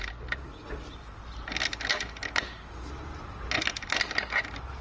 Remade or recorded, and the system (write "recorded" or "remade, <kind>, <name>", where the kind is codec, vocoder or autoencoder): recorded